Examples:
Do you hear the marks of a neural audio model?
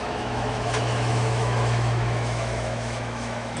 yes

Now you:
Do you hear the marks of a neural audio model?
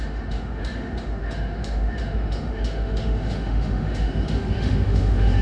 yes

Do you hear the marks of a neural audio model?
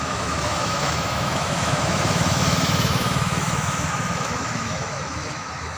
yes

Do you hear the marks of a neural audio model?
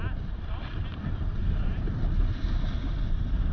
no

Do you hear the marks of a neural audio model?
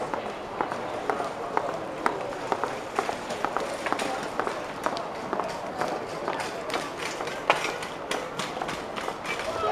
no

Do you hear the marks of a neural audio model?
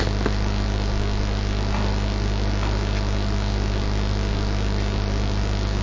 no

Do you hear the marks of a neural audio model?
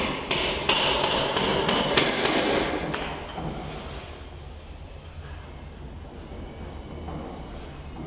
no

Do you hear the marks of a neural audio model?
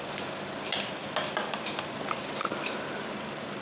no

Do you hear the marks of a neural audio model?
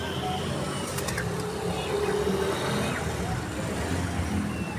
no